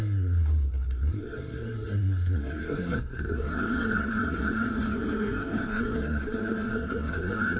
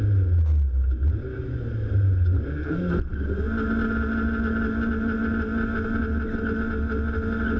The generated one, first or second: first